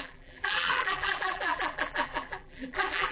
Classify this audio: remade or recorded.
remade